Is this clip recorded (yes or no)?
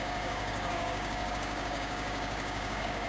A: no